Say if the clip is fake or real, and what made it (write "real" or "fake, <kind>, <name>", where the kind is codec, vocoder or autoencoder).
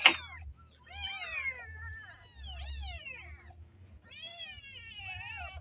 real